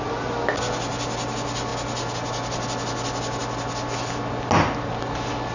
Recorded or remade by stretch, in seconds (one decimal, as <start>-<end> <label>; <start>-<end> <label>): 0.0-5.5 recorded